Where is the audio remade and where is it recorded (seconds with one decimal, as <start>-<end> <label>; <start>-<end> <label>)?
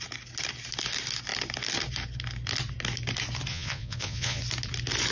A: 0.0-3.5 recorded; 3.5-4.4 remade; 4.4-5.1 recorded